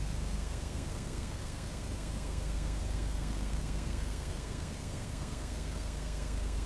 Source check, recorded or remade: remade